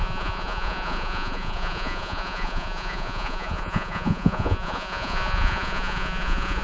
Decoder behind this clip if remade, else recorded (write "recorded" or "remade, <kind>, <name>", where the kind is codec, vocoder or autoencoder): remade, vocoder, Vocos